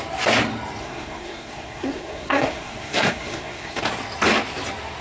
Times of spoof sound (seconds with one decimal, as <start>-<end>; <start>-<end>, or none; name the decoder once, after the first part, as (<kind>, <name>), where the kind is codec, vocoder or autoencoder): 0.8-3.8 (codec, SNAC)